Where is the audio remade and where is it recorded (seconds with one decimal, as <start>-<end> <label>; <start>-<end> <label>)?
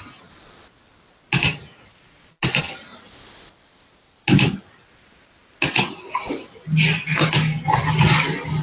0.0-8.6 recorded